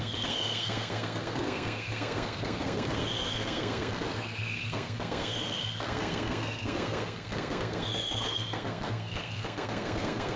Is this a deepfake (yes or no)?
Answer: yes